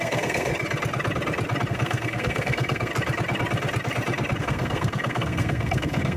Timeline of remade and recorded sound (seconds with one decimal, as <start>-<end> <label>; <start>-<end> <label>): 0.0-0.5 remade; 0.5-1.7 recorded; 1.7-2.9 remade; 2.9-4.4 recorded; 4.4-6.2 remade